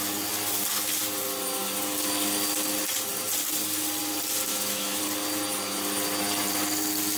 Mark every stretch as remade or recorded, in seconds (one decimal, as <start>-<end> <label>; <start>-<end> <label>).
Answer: 0.0-4.5 recorded; 4.5-5.0 remade; 5.0-7.2 recorded